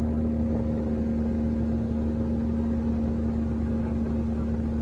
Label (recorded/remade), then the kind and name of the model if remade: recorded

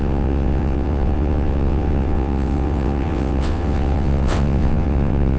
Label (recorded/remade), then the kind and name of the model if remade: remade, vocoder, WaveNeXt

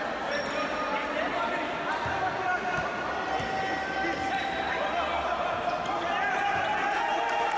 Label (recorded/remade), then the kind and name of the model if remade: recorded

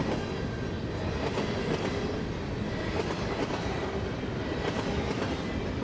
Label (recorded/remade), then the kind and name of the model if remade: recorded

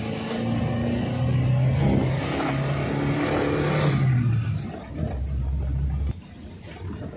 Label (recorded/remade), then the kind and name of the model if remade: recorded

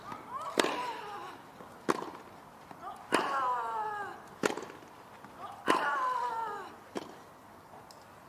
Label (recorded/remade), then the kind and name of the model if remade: recorded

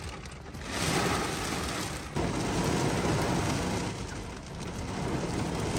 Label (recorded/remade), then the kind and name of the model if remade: recorded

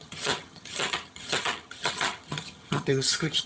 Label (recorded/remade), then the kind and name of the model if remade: remade, vocoder, HiFi-GAN